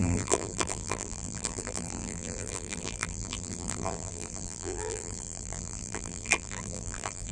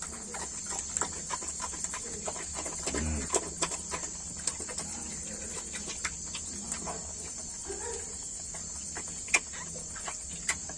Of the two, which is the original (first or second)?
second